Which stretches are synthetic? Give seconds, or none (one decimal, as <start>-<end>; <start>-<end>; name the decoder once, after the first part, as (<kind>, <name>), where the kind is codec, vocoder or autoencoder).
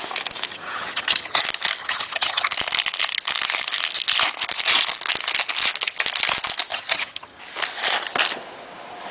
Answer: 0.5-1.4 (vocoder, HiFi-GAN); 1.8-2.5; 6.7-7.4